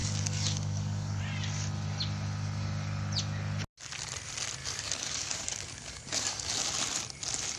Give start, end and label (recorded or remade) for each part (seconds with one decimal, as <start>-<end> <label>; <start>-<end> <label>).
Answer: 0.0-1.2 remade; 1.2-4.6 recorded; 4.6-6.5 remade; 6.5-7.6 recorded